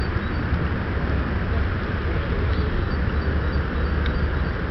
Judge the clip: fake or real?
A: real